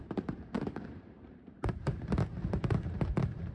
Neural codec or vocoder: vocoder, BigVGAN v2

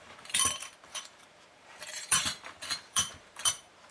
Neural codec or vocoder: vocoder, BigVGAN v2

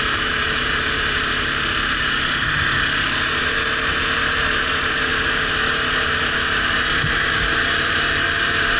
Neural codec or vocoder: vocoder, BigVGAN v2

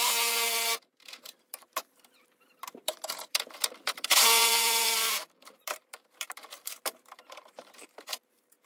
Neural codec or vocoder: vocoder, BigVGAN v2